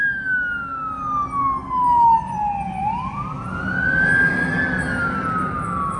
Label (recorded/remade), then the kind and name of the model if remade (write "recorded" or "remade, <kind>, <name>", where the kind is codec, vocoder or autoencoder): recorded